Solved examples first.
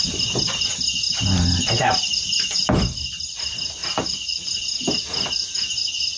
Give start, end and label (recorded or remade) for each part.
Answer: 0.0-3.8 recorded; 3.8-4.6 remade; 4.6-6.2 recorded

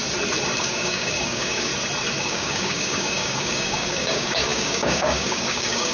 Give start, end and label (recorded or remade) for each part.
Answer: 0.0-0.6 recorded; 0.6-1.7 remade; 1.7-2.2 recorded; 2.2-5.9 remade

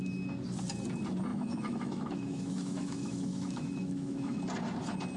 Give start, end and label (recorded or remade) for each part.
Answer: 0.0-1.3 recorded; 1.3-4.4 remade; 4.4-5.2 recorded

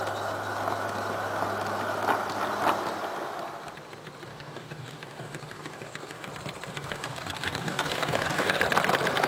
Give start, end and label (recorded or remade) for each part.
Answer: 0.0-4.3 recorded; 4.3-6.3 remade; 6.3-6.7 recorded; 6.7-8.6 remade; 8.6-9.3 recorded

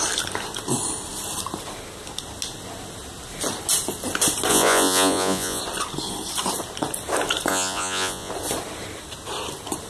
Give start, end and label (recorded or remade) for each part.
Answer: 0.0-4.5 recorded; 4.5-5.6 remade; 5.6-7.5 recorded; 7.5-8.3 remade; 8.3-9.9 recorded

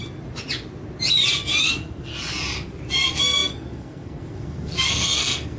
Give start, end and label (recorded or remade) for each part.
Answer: 0.0-1.4 recorded; 1.4-2.1 remade; 2.1-2.9 recorded; 2.9-5.6 remade

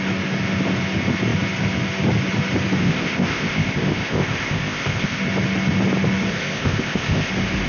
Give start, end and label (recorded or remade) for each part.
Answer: 0.0-2.8 recorded; 2.8-5.2 remade; 5.2-6.3 recorded; 6.3-7.3 remade; 7.3-7.7 recorded

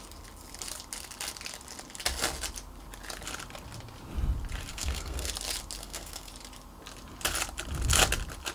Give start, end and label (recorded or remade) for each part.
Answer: 0.0-4.7 recorded; 4.7-5.3 remade; 5.3-5.8 recorded; 5.8-6.3 remade; 6.3-8.5 recorded